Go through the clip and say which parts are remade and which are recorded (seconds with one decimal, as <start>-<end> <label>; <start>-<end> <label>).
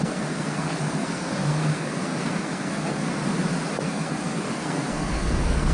0.0-3.2 remade; 3.2-3.8 recorded; 3.8-5.7 remade